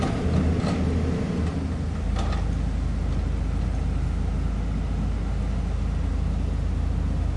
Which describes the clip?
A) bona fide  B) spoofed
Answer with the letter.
A